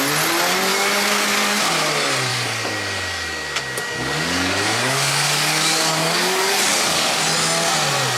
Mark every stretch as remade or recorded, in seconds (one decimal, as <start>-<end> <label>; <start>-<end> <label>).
0.0-0.7 recorded; 0.7-1.6 remade; 1.6-2.3 recorded; 2.3-7.2 remade; 7.2-8.2 recorded